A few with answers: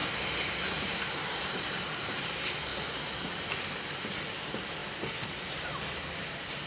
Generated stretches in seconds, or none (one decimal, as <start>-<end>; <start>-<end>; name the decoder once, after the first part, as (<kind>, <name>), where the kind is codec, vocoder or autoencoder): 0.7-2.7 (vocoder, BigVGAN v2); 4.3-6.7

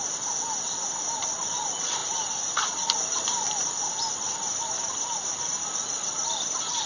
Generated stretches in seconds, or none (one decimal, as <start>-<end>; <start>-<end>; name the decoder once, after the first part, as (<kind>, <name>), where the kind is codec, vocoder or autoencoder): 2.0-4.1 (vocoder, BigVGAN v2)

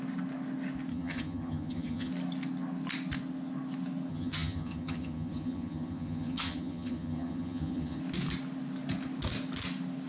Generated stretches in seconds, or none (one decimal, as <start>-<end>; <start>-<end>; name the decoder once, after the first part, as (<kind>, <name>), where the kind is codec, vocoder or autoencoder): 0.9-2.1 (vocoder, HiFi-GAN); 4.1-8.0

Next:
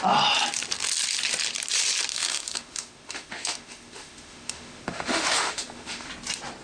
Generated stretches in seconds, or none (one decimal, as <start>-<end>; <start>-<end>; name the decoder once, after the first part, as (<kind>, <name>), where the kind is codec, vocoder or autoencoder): 2.1-6.1 (autoencoder, DAC-VAE)

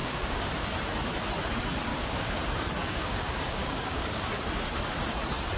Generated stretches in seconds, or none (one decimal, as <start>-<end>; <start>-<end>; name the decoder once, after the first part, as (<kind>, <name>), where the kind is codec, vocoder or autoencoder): 0.0-0.5 (codec, DAC); 1.9-2.4; 2.8-4.2

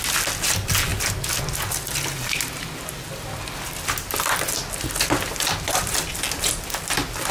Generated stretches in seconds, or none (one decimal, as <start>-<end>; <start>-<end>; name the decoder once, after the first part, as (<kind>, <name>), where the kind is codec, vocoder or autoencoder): none

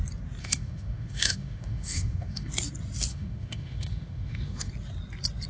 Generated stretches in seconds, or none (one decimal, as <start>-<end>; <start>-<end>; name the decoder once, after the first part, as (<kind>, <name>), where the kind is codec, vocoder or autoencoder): 0.4-2.5 (autoencoder, DAC-VAE); 3.1-4.7